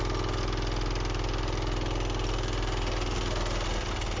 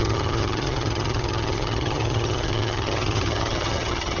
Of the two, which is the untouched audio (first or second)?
first